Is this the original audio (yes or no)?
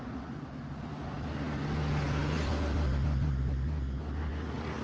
yes